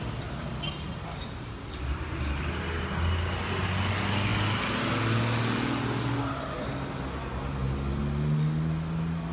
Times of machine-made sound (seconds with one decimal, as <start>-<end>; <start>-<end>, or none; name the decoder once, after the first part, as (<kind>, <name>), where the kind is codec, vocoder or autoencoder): none